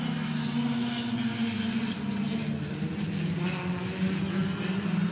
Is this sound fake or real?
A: real